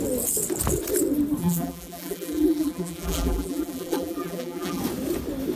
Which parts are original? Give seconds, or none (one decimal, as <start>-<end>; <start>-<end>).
0.0-1.4; 4.8-5.6